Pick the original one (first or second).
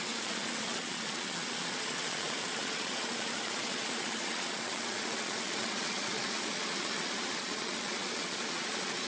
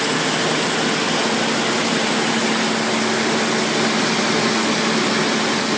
second